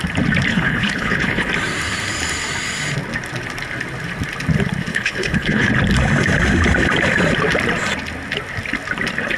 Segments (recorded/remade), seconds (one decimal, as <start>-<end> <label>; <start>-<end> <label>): 0.0-0.5 recorded; 0.5-1.5 remade; 1.5-4.9 recorded; 4.9-5.7 remade; 5.7-9.4 recorded